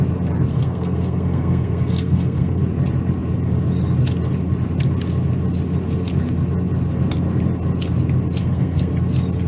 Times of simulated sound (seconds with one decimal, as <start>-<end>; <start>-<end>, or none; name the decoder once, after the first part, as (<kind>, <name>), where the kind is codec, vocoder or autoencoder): 0.5-2.6 (codec, SNAC); 8.4-8.9